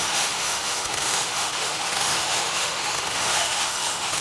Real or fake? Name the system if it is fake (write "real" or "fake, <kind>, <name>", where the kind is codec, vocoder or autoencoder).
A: fake, autoencoder, DAC-VAE